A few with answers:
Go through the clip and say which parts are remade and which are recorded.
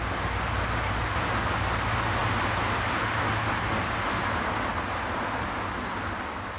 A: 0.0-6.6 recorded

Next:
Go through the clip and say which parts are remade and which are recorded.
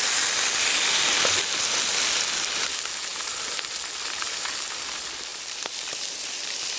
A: 0.0-3.1 recorded; 3.1-3.6 remade; 3.6-5.3 recorded; 5.3-6.8 remade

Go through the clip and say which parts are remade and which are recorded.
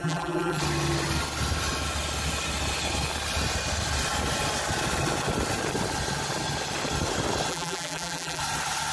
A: 0.0-0.6 remade; 0.6-7.5 recorded; 7.5-8.4 remade; 8.4-8.9 recorded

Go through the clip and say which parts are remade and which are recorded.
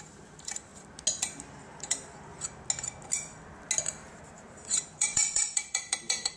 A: 0.0-0.7 remade; 0.7-1.5 recorded; 1.5-2.3 remade; 2.3-4.2 recorded; 4.2-6.4 remade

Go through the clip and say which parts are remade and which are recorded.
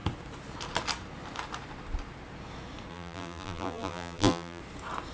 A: 0.0-2.9 recorded; 2.9-4.6 remade; 4.6-5.1 recorded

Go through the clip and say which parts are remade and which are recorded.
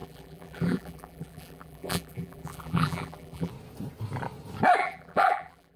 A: 0.0-3.5 remade; 3.5-4.8 recorded; 4.8-5.8 remade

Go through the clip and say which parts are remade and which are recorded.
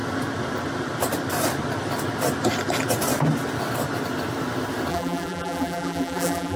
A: 0.0-4.9 recorded; 4.9-6.6 remade